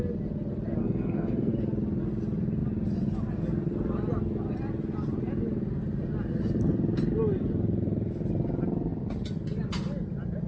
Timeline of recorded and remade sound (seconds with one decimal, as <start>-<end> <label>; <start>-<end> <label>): 0.0-0.8 recorded; 0.8-1.5 remade; 1.5-10.5 recorded